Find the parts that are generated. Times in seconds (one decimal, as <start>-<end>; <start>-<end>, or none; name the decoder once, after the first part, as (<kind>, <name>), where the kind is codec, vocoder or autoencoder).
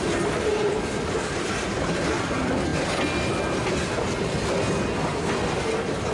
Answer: none